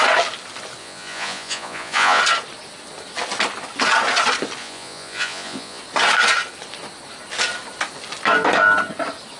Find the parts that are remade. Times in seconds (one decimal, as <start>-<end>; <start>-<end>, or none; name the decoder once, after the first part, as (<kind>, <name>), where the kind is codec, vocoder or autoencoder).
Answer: 0.8-2.2 (vocoder, Vocos); 4.6-5.8